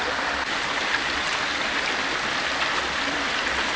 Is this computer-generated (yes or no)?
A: no